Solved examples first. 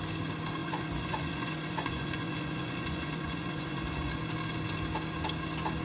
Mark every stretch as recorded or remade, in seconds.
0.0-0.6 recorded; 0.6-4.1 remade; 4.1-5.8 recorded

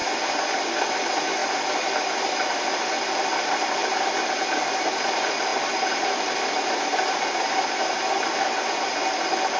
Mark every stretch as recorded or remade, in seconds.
0.0-9.6 recorded

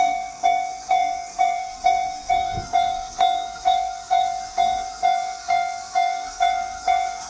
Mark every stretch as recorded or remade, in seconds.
0.0-7.3 remade

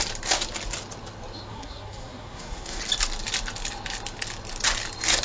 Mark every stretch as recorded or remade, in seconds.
0.0-1.5 recorded; 1.5-2.8 remade; 2.8-5.2 recorded

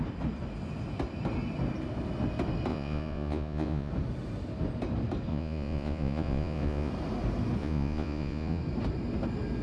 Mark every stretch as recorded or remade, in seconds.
0.0-2.7 recorded; 2.7-3.9 remade; 3.9-5.3 recorded; 5.3-6.9 remade; 6.9-7.6 recorded; 7.6-8.6 remade; 8.6-9.6 recorded

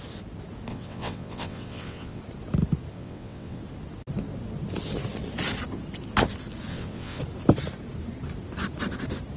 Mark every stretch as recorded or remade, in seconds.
0.0-0.7 recorded; 0.7-2.2 remade; 2.2-2.9 recorded; 2.9-3.6 remade; 3.6-6.7 recorded; 6.7-7.2 remade; 7.2-9.4 recorded

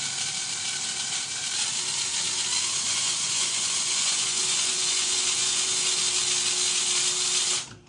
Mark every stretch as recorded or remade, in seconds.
0.0-2.9 recorded; 2.9-6.0 remade; 6.0-7.9 recorded